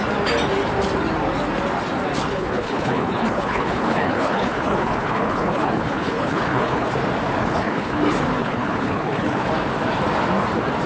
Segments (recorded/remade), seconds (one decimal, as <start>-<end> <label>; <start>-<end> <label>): 0.0-2.3 recorded; 2.3-6.9 remade; 6.9-7.4 recorded; 7.4-8.0 remade; 8.0-8.4 recorded; 8.4-9.5 remade; 9.5-10.9 recorded